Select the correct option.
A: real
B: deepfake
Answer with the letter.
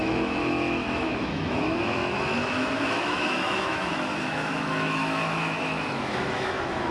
B